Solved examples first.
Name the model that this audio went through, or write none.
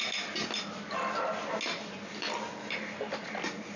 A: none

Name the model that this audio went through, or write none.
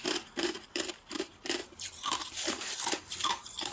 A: vocoder, BigVGAN v2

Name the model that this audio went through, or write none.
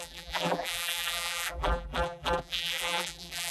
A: vocoder, BigVGAN v2